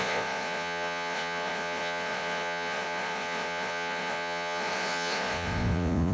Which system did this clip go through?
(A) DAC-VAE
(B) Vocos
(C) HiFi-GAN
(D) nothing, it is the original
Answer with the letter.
B